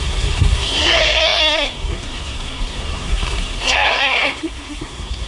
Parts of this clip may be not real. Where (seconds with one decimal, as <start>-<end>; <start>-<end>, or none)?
0.0-5.3